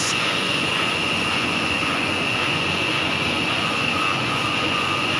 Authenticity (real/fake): fake